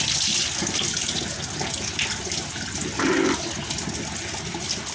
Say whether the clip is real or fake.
real